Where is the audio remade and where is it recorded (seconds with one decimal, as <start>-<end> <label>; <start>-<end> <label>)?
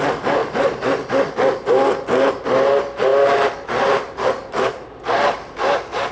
0.0-6.1 recorded